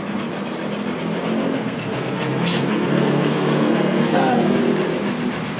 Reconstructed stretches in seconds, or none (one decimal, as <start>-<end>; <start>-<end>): 1.5-4.6

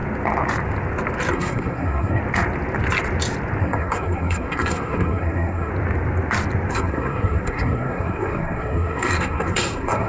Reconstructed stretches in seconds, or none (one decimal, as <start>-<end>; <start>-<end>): 1.3-2.2; 3.6-5.7; 6.7-10.1

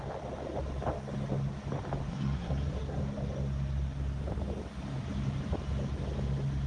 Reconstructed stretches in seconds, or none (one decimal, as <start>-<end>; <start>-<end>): 2.1-3.0

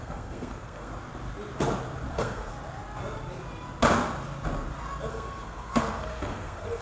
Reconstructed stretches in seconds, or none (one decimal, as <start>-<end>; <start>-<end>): 0.0-0.9; 2.1-2.5; 5.1-6.8